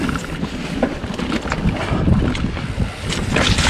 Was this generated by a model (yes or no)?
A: no